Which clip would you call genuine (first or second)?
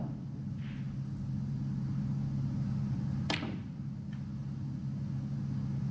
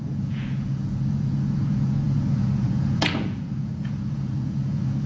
first